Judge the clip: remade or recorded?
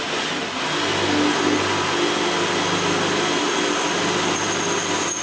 recorded